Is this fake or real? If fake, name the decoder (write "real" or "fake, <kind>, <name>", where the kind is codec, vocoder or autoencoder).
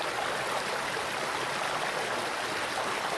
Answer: real